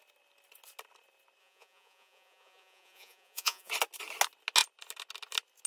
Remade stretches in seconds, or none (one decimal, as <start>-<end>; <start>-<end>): 1.4-3.7